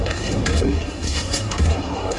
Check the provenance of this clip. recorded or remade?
remade